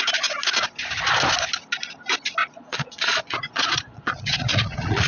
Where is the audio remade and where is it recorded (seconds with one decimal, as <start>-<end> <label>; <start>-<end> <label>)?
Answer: 0.0-2.4 recorded; 2.4-5.1 remade